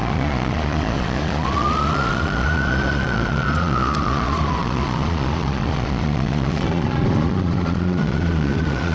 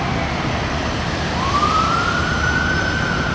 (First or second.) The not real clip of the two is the first